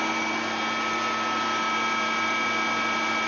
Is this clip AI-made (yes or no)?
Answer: no